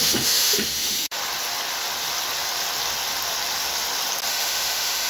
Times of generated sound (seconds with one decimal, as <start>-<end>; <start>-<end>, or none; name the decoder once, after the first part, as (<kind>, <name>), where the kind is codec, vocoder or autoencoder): 0.0-1.2 (autoencoder, DAC-VAE); 4.3-5.1